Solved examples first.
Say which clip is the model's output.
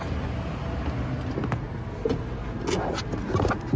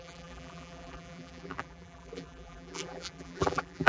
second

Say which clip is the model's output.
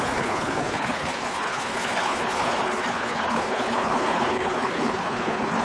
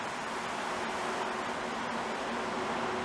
first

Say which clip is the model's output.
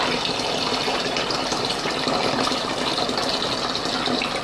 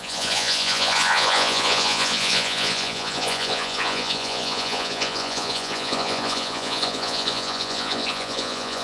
second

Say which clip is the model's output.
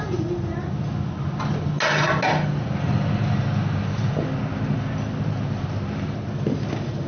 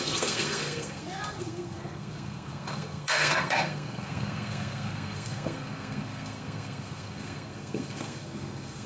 second